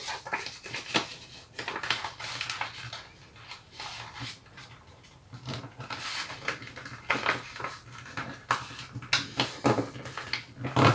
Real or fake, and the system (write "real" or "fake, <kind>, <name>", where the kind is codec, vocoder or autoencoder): real